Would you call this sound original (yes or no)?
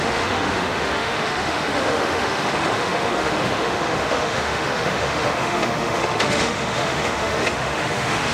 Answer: no